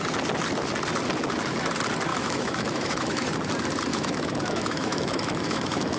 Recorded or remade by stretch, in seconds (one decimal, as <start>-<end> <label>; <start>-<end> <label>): 0.0-2.1 recorded; 2.1-3.3 remade; 3.3-3.9 recorded; 3.9-6.0 remade